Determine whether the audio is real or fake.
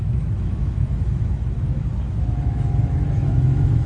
fake